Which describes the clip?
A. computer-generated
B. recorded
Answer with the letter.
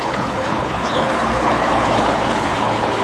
A